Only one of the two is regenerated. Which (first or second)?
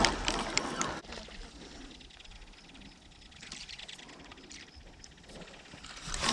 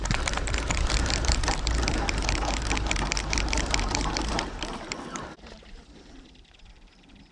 second